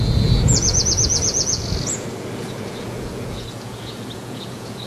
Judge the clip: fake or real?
fake